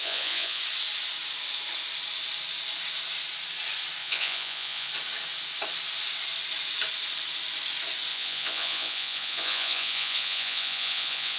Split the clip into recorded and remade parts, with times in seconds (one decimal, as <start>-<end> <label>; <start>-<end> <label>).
0.0-0.6 remade; 0.6-4.0 recorded; 4.0-4.9 remade; 4.9-8.1 recorded; 8.1-11.4 remade